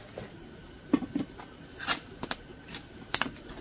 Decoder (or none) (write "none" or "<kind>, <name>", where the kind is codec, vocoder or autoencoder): none